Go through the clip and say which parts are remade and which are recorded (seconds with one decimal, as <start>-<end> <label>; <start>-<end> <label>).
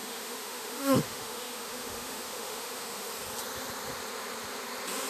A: 0.0-3.1 remade; 3.1-5.1 recorded